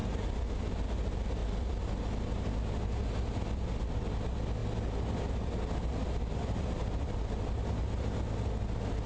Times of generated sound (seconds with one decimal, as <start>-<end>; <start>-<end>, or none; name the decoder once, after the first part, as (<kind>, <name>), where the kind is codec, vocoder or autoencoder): none